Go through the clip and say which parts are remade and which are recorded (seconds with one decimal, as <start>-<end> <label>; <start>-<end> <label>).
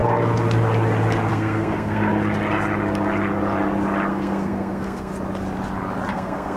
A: 0.0-1.3 recorded; 1.3-2.1 remade; 2.1-4.1 recorded; 4.1-5.1 remade; 5.1-6.1 recorded; 6.1-6.6 remade